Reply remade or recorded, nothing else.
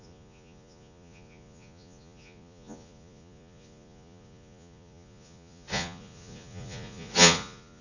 remade